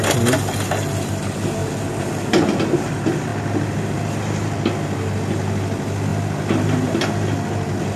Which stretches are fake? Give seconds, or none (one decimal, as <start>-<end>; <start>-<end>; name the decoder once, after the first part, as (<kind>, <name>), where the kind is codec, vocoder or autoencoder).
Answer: none

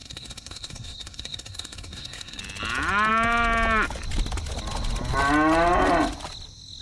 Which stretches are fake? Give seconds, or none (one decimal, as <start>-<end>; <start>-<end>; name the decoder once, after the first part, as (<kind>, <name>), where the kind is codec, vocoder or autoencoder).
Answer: 0.0-2.4 (codec, SNAC)

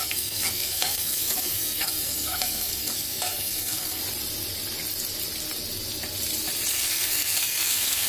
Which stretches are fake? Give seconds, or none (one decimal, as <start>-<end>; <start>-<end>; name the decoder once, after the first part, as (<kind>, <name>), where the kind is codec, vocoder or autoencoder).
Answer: 0.0-4.0 (codec, SNAC); 6.7-8.1

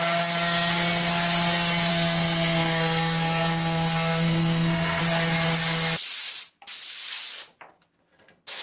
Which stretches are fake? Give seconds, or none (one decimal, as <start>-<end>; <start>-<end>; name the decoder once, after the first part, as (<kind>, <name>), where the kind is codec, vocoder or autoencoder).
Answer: 1.9-5.0 (codec, SNAC)

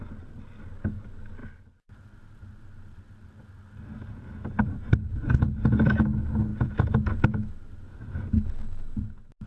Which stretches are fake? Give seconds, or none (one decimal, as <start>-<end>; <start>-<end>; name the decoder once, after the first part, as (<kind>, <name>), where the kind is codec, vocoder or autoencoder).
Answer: none

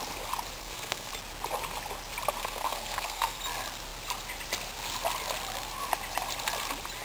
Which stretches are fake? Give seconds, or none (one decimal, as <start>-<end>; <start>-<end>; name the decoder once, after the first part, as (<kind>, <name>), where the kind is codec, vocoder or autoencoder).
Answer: 0.6-1.1 (codec, SNAC); 2.4-3.4

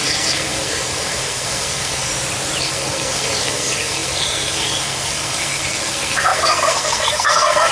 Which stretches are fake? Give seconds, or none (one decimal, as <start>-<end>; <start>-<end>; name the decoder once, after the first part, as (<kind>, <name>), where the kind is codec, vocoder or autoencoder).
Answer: 0.0-2.1 (codec, SNAC); 2.6-7.7